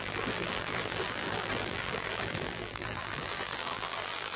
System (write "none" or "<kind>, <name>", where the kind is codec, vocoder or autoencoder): vocoder, BigVGAN v2